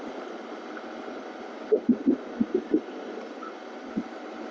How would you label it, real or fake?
real